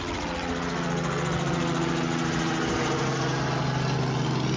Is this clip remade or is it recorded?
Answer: recorded